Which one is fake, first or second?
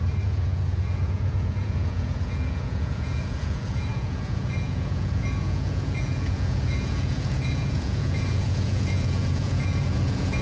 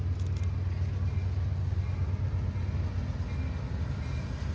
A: first